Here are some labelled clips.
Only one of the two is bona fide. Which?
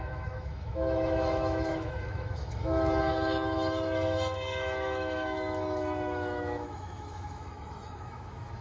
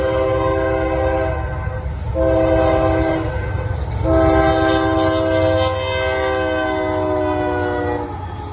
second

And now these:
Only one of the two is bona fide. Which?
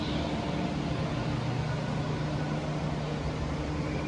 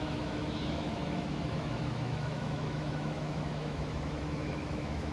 first